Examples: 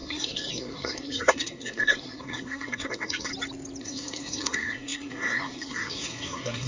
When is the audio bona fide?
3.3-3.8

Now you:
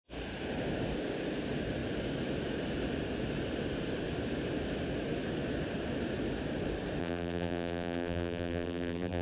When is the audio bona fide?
0.0-7.0

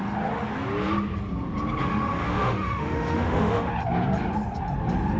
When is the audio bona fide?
0.0-1.8; 3.7-5.2

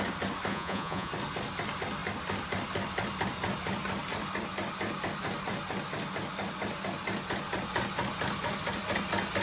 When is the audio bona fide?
0.0-0.5; 1.1-9.4

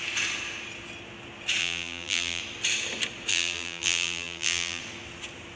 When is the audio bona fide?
0.0-1.6; 2.4-3.3; 4.8-5.6